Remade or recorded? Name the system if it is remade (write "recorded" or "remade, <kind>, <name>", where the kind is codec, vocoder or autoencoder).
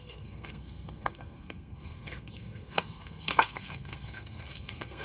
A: remade, codec, SNAC